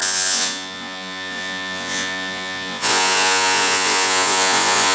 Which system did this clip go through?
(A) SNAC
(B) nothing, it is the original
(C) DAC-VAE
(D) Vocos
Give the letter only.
D